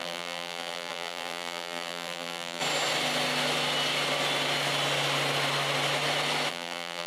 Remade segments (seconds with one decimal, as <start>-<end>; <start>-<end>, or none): 0.0-2.6; 6.5-7.1

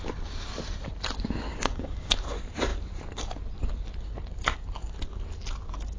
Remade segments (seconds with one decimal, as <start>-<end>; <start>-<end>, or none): 1.5-2.1

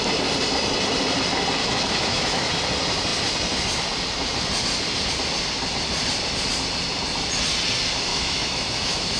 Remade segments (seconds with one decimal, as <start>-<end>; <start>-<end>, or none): 1.6-2.5; 8.1-9.2

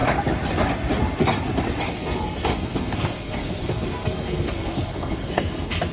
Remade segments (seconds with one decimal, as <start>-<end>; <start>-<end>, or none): 2.0-5.9

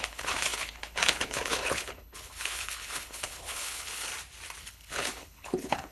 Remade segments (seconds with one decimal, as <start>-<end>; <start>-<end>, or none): 0.0-4.1; 4.6-5.9